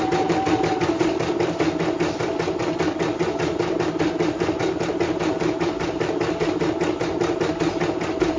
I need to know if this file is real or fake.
real